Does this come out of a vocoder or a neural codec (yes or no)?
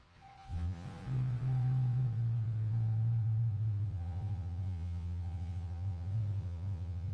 yes